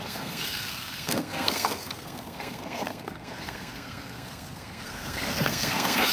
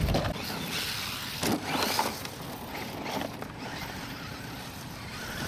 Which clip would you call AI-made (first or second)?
first